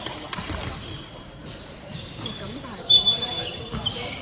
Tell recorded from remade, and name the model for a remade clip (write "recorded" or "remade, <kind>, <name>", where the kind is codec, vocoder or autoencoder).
remade, vocoder, BigVGAN v2